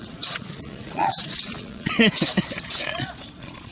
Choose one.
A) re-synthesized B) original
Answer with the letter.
A